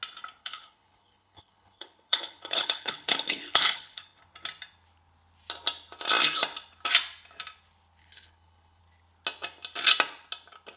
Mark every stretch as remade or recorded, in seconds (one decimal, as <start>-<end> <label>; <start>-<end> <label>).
0.0-0.4 recorded; 0.4-4.2 remade; 4.2-8.0 recorded; 8.0-8.8 remade; 8.8-10.8 recorded